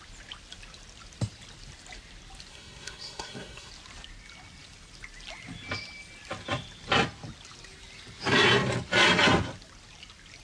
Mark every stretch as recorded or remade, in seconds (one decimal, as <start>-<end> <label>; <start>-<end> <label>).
0.0-2.5 recorded; 2.5-3.7 remade; 3.7-10.4 recorded